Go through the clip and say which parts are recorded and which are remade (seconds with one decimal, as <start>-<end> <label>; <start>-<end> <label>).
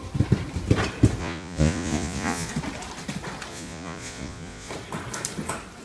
0.0-1.2 recorded; 1.2-2.5 remade; 2.5-3.5 recorded; 3.5-4.7 remade; 4.7-5.8 recorded